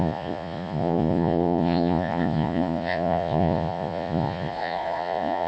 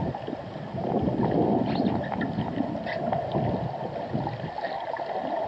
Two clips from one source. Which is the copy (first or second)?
first